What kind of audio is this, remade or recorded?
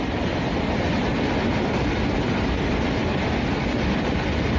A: recorded